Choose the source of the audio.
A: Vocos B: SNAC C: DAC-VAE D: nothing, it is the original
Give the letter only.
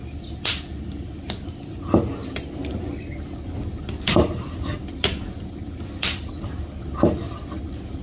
D